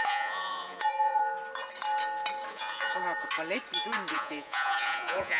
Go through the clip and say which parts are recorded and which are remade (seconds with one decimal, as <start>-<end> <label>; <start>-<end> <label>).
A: 0.0-1.2 remade; 1.2-2.5 recorded; 2.5-3.0 remade; 3.0-4.1 recorded; 4.1-5.4 remade